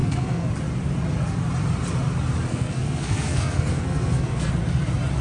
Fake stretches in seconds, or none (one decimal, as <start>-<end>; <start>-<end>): 0.0-0.5; 2.5-4.5